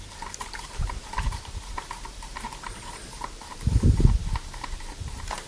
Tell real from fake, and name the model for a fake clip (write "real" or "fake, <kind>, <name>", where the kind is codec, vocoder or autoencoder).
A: fake, vocoder, BigVGAN v2